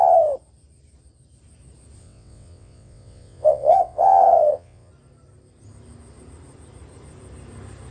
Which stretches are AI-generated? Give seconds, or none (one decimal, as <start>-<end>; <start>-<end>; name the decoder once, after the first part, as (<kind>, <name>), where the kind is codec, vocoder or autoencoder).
2.0-4.9 (vocoder, WaveNeXt)